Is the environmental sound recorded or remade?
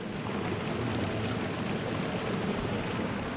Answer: recorded